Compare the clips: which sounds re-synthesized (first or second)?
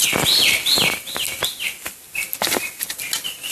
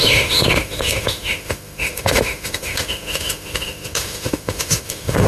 second